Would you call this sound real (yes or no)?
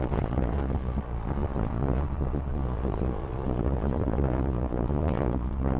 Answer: no